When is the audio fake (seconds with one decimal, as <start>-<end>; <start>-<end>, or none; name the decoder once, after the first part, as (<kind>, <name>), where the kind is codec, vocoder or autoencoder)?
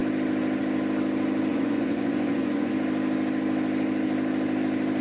1.5-2.7 (vocoder, Vocos)